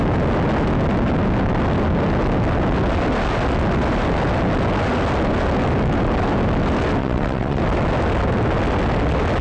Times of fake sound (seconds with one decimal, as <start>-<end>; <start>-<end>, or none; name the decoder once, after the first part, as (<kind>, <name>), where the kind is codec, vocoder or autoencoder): 7.0-7.6 (vocoder, WaveNeXt)